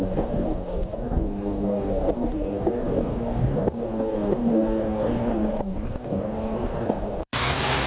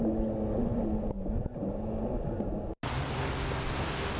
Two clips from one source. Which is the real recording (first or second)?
second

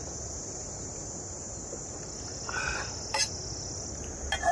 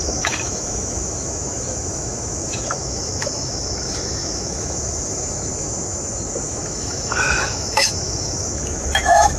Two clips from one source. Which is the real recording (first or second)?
first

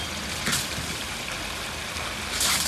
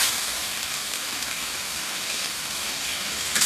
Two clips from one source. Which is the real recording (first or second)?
first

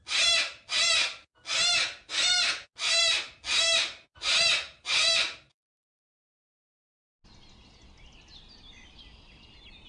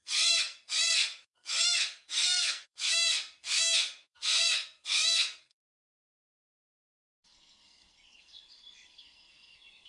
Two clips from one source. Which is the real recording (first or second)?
first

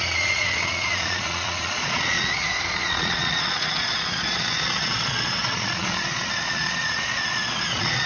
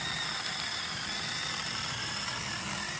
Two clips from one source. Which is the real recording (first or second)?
second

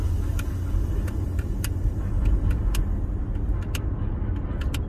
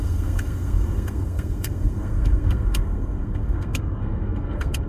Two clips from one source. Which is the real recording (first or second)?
first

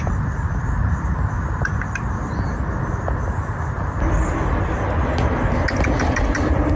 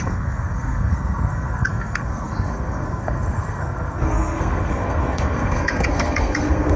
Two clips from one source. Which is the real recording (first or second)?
first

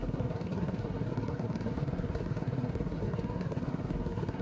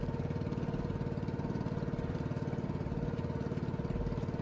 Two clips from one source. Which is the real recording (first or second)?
second